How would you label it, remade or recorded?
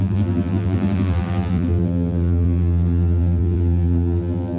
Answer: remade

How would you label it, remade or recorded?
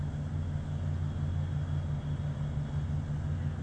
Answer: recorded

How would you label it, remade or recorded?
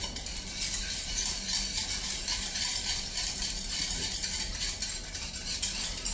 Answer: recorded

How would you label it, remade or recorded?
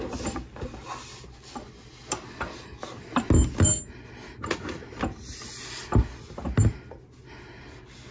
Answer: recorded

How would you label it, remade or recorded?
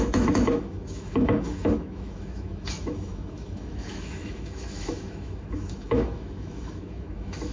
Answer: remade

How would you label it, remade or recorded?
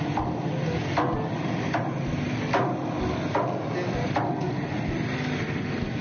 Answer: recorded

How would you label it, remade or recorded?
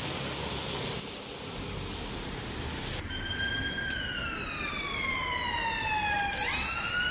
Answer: recorded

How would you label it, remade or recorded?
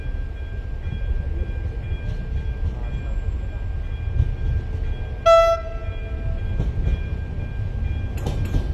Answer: recorded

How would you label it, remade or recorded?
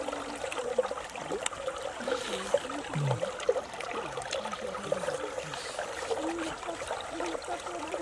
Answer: recorded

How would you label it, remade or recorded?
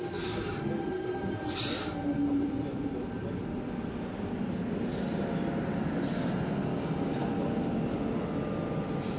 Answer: recorded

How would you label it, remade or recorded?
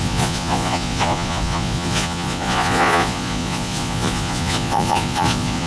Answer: remade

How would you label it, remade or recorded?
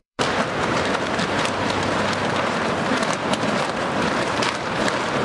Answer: remade